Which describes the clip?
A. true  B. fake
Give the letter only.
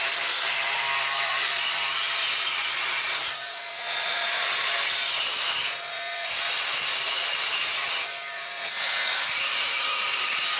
A